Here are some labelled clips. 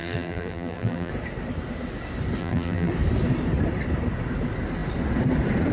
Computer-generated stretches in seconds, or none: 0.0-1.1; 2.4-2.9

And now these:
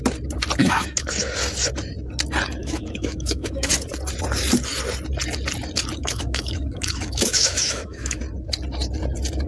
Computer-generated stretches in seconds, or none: 0.6-1.1; 2.6-3.7; 6.0-8.2

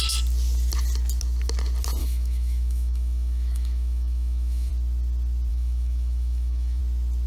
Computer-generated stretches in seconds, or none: 2.0-4.7; 5.5-6.8